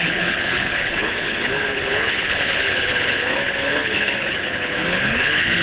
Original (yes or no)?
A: no